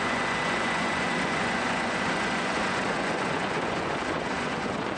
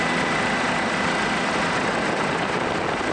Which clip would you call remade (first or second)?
first